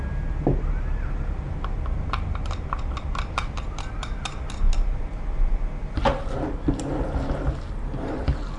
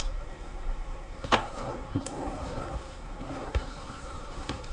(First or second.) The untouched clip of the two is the first